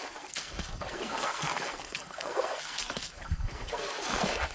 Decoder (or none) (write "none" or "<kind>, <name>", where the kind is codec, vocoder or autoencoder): codec, SNAC